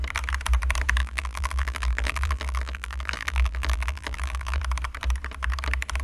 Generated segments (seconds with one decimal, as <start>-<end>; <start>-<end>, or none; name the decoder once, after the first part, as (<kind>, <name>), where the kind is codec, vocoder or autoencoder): 1.0-4.6 (vocoder, BigVGAN v2)